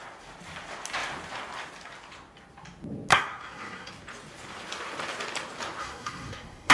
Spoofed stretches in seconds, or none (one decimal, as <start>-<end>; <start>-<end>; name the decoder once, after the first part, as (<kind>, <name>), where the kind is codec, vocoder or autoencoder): 3.1-3.9 (codec, SNAC); 5.8-6.7